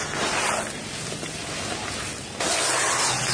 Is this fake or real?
real